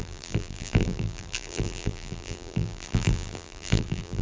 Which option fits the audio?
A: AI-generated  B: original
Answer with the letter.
A